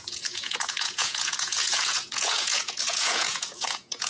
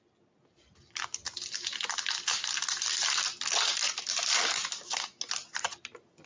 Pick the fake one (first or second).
first